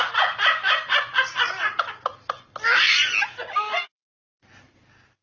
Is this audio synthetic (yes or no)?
no